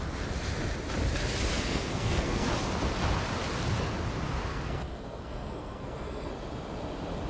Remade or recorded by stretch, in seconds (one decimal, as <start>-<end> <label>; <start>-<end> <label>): 0.0-1.5 recorded; 1.5-2.5 remade; 2.5-4.5 recorded; 4.5-6.3 remade; 6.3-7.3 recorded